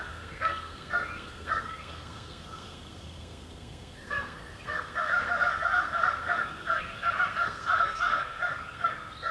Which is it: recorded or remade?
remade